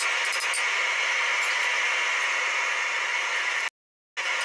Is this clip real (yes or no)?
yes